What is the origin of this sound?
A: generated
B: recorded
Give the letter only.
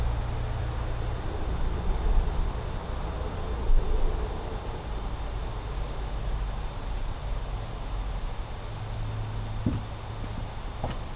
B